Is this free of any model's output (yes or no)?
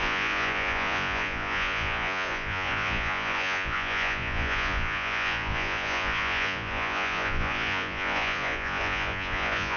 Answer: no